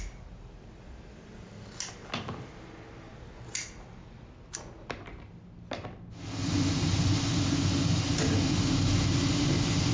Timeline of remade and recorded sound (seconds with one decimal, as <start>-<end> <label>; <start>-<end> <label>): 0.0-9.9 recorded